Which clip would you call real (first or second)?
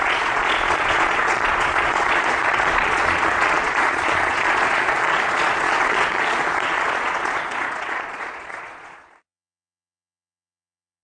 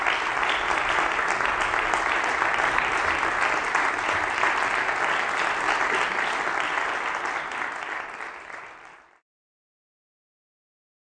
second